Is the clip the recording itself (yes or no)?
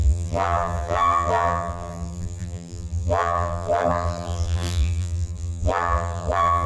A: no